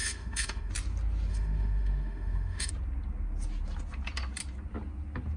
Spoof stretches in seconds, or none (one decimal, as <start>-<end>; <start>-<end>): 0.0-0.7; 1.3-2.7